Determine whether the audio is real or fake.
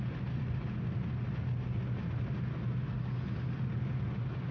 real